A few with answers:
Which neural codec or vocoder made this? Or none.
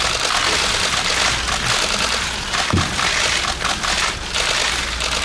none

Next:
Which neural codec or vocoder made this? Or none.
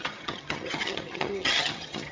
vocoder, HiFi-GAN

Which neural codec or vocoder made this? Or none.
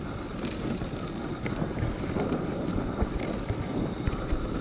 none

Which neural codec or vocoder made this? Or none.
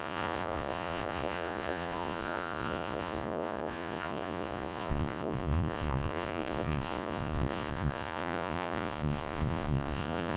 vocoder, Vocos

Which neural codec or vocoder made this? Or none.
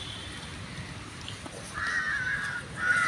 none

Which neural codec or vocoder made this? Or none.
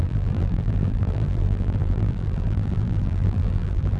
vocoder, BigVGAN v2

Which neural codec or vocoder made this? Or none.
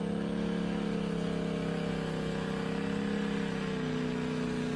none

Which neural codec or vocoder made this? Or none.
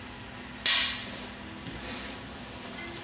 none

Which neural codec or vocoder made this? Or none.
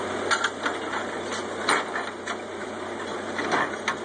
none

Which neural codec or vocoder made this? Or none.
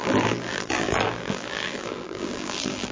vocoder, BigVGAN v2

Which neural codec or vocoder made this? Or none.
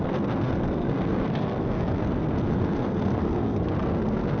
codec, SNAC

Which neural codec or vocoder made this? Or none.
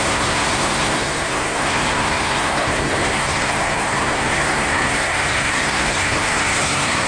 codec, SNAC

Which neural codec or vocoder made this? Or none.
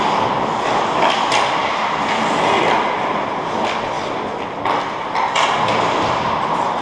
none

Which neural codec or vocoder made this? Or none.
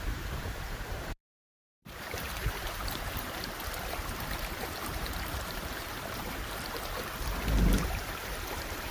vocoder, BigVGAN v2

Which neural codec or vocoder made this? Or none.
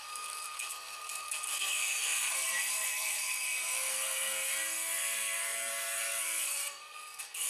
codec, SNAC